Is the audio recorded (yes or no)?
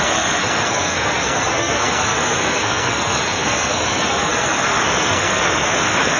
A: no